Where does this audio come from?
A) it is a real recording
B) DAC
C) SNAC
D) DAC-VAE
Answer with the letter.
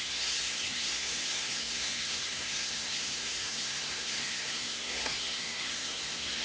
C